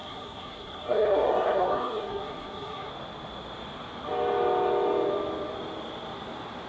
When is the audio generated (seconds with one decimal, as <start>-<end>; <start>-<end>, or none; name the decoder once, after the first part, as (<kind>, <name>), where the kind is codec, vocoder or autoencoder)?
0.0-2.9 (codec, SNAC)